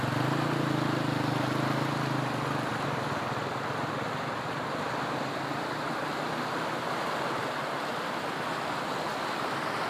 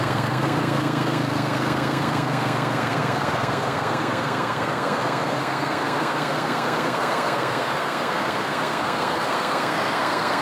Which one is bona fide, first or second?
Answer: first